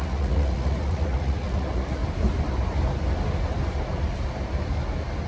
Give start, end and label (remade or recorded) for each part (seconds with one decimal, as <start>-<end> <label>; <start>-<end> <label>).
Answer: 0.0-2.0 remade; 2.0-5.3 recorded

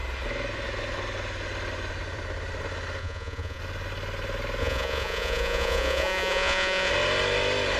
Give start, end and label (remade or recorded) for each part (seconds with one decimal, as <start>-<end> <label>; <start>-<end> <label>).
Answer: 0.0-3.0 recorded; 3.0-3.6 remade; 3.6-4.6 recorded; 4.6-6.9 remade; 6.9-7.8 recorded

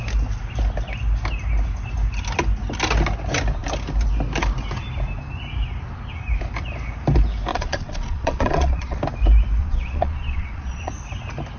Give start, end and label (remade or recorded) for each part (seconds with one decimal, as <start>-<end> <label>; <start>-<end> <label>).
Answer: 0.0-7.5 recorded; 7.5-9.0 remade; 9.0-9.6 recorded; 9.6-10.9 remade; 10.9-11.6 recorded